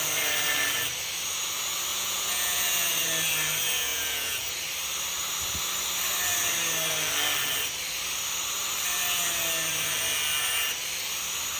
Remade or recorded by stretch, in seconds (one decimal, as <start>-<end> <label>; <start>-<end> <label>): 0.0-1.9 recorded; 1.9-2.9 remade; 2.9-3.9 recorded; 3.9-4.5 remade; 4.5-11.6 recorded